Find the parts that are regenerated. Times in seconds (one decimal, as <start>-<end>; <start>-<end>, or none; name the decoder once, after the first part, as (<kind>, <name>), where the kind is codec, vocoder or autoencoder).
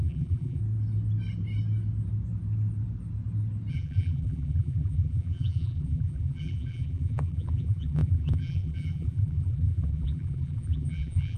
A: 0.0-0.6 (vocoder, BigVGAN v2); 3.7-11.4